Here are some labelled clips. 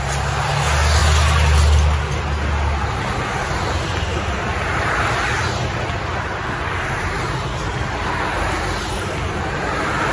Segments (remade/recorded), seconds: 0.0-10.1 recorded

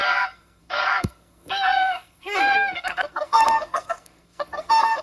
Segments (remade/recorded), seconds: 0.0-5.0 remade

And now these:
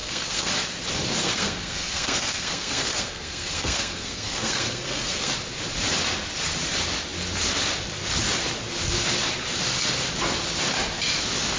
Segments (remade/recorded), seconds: 0.0-0.5 remade; 0.5-1.2 recorded; 1.2-5.3 remade; 5.3-11.6 recorded